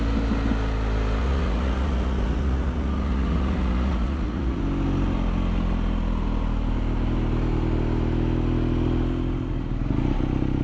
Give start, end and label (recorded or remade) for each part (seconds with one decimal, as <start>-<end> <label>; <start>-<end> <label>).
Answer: 0.0-1.2 recorded; 1.2-4.6 remade; 4.6-10.6 recorded